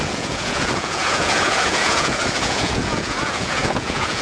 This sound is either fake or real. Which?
fake